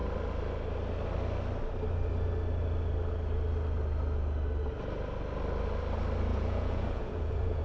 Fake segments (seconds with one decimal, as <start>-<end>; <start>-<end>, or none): 6.3-7.6